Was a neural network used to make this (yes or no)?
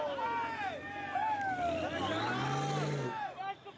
no